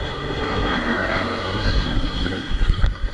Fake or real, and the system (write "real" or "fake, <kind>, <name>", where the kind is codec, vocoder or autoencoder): fake, codec, SNAC